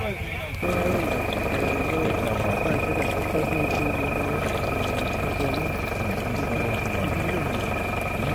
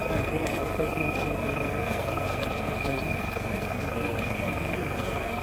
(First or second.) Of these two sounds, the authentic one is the first